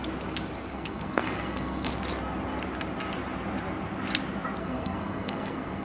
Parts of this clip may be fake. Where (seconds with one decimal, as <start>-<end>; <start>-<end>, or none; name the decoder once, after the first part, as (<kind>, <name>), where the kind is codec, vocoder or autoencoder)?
0.7-1.9 (codec, SNAC); 4.6-5.8